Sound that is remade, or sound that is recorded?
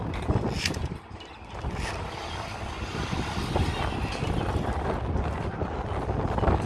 recorded